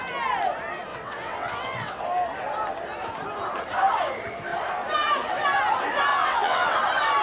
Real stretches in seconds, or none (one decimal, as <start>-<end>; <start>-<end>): 0.0-0.9; 2.0-6.1; 6.8-7.2